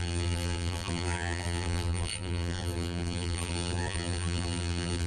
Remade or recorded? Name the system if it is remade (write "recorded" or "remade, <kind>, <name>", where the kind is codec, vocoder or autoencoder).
remade, vocoder, BigVGAN v2